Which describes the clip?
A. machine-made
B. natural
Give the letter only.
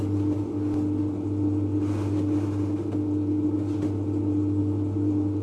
B